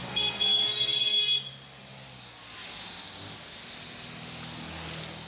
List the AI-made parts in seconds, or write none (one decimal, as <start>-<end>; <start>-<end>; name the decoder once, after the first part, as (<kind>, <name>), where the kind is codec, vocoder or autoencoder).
0.0-1.2 (codec, SNAC)